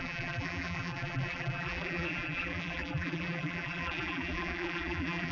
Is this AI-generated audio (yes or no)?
yes